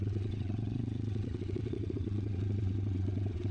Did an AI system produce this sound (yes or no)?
yes